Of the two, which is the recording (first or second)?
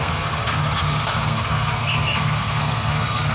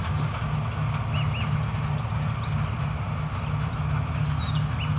second